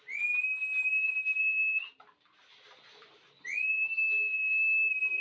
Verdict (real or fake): real